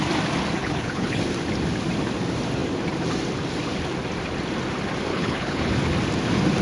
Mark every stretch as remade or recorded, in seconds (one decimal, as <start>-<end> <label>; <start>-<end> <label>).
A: 0.0-0.6 recorded; 0.6-1.2 remade; 1.2-5.1 recorded; 5.1-5.7 remade; 5.7-6.6 recorded